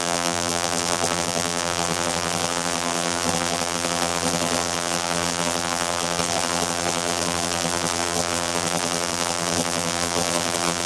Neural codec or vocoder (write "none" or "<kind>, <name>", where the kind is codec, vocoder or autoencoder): vocoder, BigVGAN v2